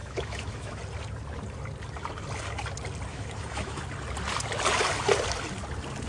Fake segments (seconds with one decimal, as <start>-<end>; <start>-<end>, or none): 0.0-0.8; 3.1-3.8